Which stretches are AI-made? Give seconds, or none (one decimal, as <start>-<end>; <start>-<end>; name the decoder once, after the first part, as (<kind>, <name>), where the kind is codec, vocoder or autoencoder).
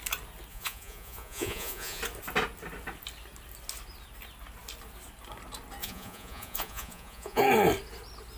0.5-2.0 (vocoder, Vocos); 5.8-7.4